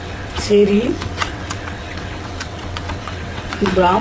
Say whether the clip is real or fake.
fake